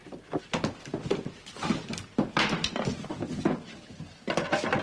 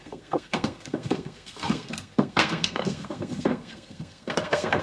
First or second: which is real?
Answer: first